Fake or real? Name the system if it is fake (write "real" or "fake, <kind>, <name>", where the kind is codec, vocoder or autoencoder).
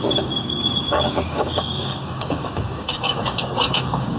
fake, codec, DAC